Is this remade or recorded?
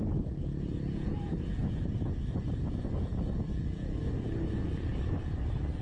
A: recorded